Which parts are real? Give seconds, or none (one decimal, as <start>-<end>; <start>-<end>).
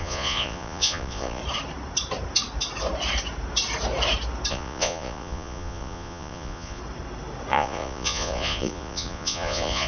1.4-4.5; 6.8-7.5